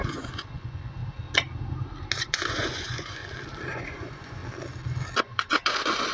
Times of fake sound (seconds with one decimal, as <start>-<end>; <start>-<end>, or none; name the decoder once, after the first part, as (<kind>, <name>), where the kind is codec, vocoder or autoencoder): 0.0-1.0 (vocoder, Vocos); 2.2-3.2; 3.7-4.4; 5.2-6.1